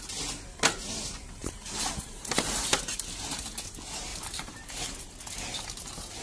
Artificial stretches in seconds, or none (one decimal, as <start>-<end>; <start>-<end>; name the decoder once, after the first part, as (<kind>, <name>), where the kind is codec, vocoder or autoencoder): 1.4-2.3 (vocoder, BigVGAN v2); 4.1-5.3